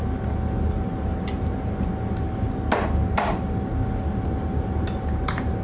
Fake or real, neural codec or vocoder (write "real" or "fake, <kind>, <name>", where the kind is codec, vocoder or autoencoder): real